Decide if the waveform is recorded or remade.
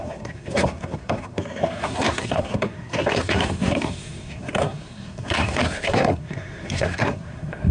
remade